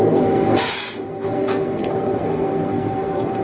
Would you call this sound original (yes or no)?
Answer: no